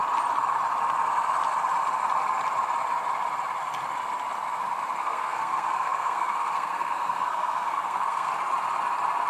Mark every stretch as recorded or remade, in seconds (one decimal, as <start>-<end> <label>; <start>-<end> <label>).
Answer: 0.0-5.0 recorded; 5.0-8.3 remade; 8.3-9.3 recorded